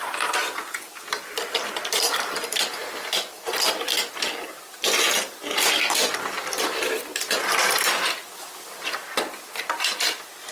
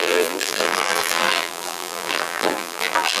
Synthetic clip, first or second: second